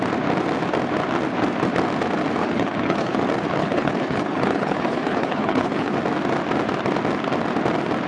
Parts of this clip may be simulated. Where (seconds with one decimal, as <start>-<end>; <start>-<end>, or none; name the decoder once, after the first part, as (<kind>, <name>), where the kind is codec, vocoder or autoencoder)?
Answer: 2.4-3.2 (codec, HILCodec); 3.6-5.9